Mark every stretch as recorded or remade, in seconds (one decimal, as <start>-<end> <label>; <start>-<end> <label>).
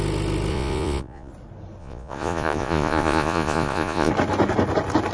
0.0-0.5 recorded; 0.5-1.3 remade; 1.3-1.8 recorded; 1.8-4.1 remade; 4.1-5.1 recorded